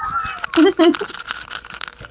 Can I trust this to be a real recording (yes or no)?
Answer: yes